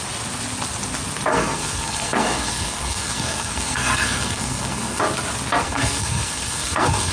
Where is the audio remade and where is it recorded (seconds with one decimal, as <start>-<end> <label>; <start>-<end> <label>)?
0.0-1.3 recorded; 1.3-5.0 remade; 5.0-5.6 recorded; 5.6-7.1 remade